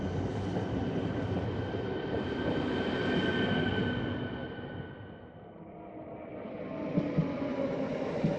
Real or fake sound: real